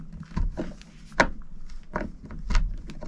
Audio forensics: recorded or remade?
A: recorded